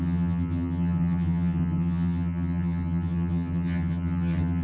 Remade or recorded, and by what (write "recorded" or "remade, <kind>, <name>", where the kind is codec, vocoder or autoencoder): remade, vocoder, HiFi-GAN